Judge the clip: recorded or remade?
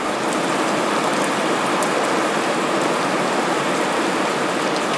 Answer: recorded